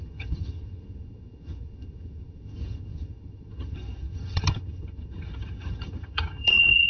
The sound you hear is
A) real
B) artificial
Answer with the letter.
B